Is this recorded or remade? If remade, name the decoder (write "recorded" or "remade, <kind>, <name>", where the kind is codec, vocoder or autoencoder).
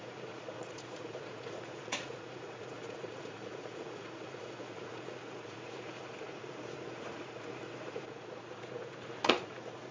remade, vocoder, Vocos